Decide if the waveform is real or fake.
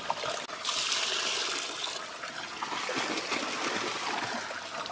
real